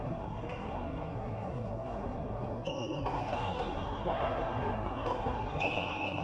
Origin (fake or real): fake